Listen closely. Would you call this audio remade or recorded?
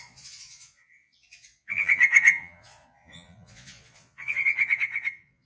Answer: remade